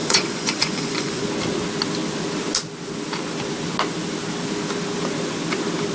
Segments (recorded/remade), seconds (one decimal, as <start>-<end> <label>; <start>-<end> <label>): 0.0-1.2 remade; 1.2-5.9 recorded